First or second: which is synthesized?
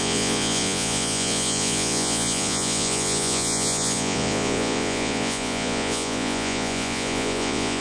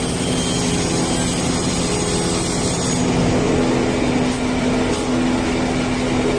first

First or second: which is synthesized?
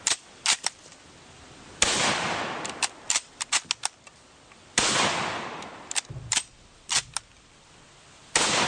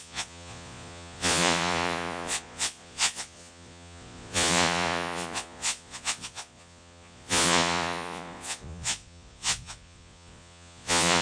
second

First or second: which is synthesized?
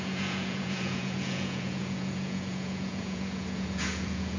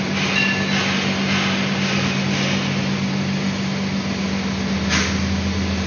first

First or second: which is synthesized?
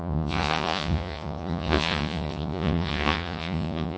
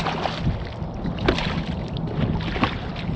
first